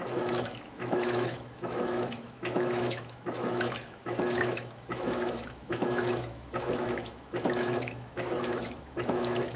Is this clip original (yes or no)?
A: no